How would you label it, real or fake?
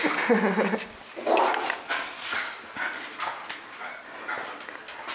real